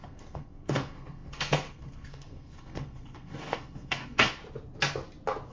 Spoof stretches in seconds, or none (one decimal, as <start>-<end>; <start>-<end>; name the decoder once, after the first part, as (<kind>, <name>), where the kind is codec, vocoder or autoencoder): 0.0-4.4 (codec, SNAC)